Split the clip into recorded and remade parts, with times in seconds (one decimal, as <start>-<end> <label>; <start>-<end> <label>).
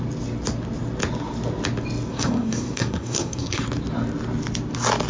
0.0-2.1 recorded; 2.1-3.6 remade; 3.6-5.1 recorded